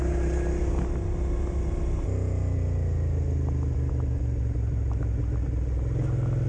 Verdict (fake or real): real